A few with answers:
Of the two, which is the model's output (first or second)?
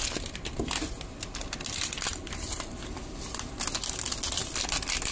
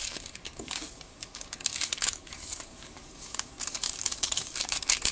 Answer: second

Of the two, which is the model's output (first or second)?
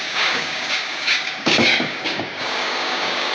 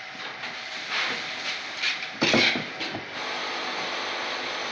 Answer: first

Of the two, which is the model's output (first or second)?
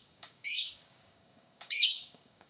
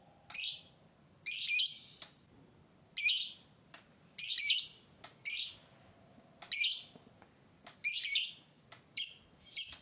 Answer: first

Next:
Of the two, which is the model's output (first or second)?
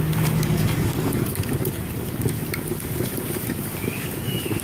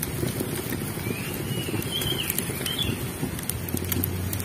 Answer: first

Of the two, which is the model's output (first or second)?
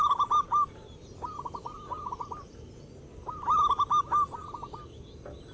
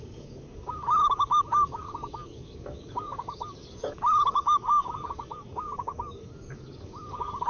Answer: second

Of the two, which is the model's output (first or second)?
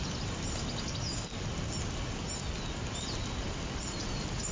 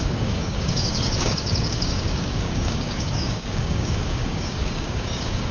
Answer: second